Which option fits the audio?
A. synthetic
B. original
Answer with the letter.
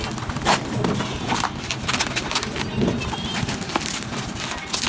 B